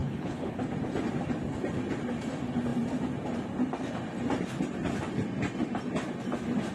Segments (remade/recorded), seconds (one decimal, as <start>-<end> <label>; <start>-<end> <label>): 0.0-0.6 remade; 0.6-6.7 recorded